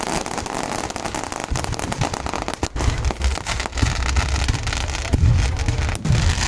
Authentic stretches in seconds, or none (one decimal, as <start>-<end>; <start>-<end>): 0.0-6.5